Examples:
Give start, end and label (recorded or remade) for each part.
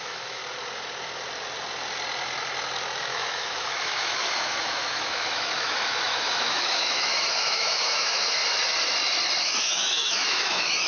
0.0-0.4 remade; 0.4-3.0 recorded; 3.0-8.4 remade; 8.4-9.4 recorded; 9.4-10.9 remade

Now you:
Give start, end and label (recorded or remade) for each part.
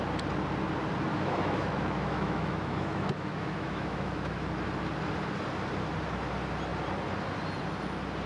0.0-1.1 recorded; 1.1-4.5 remade; 4.5-8.3 recorded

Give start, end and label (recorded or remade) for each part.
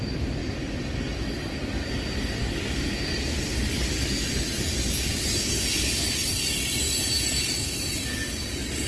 0.0-8.9 recorded